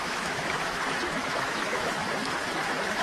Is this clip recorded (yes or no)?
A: no